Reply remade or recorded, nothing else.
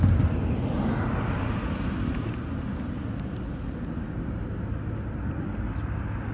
recorded